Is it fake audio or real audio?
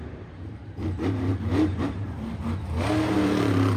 fake